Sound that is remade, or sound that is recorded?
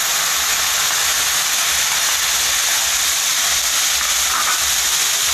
recorded